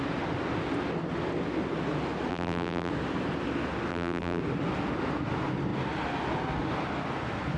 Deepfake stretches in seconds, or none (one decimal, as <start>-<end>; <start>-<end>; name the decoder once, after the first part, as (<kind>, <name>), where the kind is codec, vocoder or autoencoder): 2.3-2.9 (vocoder, BigVGAN v2); 3.9-4.4